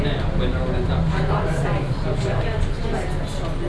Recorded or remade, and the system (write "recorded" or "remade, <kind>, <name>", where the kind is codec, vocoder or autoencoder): recorded